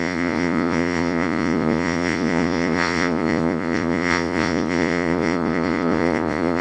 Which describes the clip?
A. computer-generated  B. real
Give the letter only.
A